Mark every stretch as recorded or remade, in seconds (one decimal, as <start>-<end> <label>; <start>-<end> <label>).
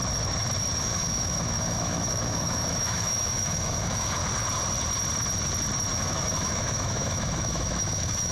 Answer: 0.0-0.8 recorded; 0.8-4.2 remade; 4.2-5.9 recorded; 5.9-8.3 remade